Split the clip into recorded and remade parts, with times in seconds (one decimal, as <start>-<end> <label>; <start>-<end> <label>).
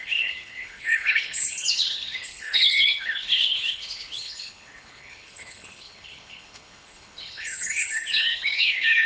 0.0-9.1 remade